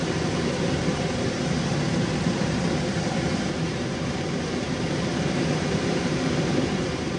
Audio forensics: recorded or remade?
remade